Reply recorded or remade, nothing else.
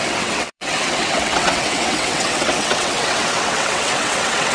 remade